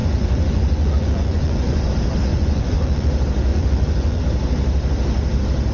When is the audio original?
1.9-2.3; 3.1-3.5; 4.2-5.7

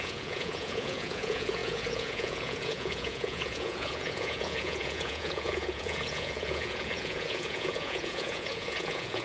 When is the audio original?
none

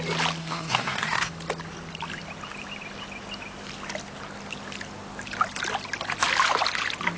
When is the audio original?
0.0-0.4; 1.3-7.2

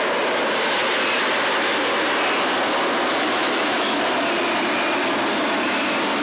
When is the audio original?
0.0-3.4; 4.0-6.2

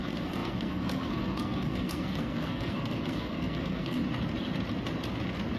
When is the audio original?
4.0-5.6